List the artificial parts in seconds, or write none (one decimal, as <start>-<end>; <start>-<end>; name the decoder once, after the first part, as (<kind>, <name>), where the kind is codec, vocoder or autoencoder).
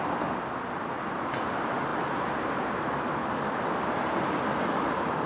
none